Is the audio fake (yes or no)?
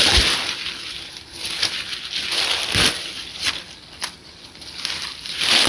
no